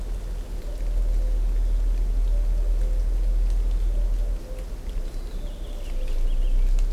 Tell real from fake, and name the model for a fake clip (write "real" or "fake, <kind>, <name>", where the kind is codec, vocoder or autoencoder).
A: real